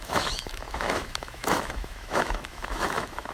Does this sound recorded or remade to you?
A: remade